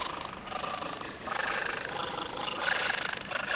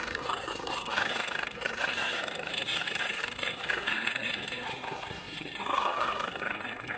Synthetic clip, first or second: second